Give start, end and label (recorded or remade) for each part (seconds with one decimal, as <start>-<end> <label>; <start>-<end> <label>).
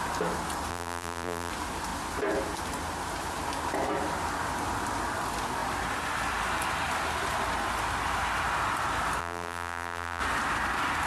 0.0-0.7 recorded; 0.7-1.5 remade; 1.5-9.2 recorded; 9.2-10.2 remade; 10.2-11.1 recorded